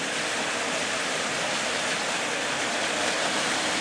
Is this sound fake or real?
real